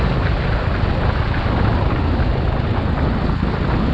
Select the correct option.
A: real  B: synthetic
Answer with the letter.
A